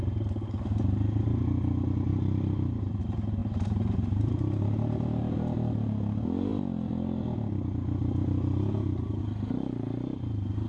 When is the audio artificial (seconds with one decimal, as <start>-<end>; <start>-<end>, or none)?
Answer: 2.1-3.0; 3.4-5.2

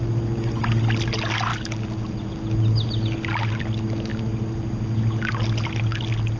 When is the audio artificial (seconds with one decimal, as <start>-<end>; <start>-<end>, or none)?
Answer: none

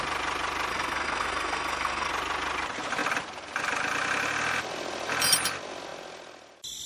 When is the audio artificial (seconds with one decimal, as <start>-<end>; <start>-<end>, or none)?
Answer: 0.7-2.1